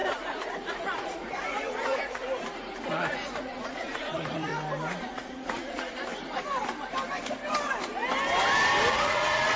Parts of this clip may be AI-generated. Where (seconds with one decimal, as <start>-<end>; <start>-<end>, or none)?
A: 0.7-2.2; 2.9-4.5; 5.0-6.1; 8.9-9.6